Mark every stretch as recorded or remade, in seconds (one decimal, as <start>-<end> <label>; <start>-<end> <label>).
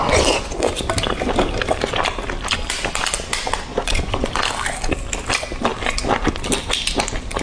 0.0-3.7 recorded; 3.7-4.3 remade; 4.3-7.4 recorded